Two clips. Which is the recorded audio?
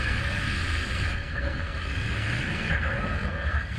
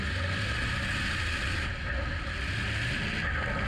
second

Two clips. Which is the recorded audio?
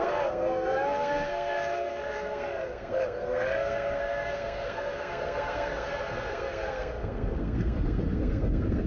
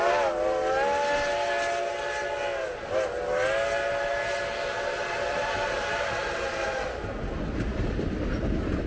second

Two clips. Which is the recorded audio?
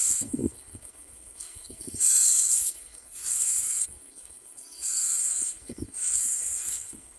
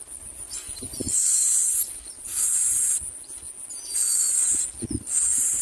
second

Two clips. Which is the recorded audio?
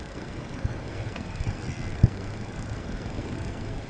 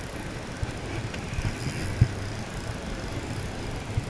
second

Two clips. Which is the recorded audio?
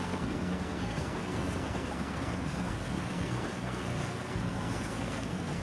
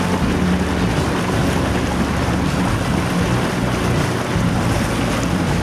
second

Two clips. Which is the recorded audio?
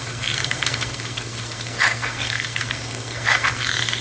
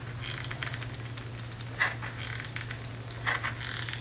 second